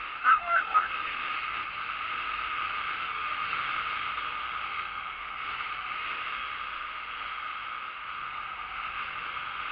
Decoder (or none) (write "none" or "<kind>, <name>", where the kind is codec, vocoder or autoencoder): autoencoder, DAC-VAE